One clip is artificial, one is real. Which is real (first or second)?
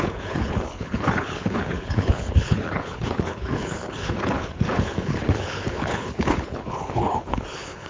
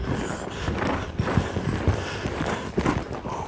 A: second